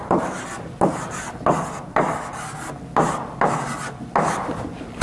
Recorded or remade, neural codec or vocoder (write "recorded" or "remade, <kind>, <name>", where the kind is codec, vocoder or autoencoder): recorded